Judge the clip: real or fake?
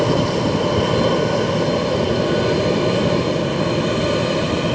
real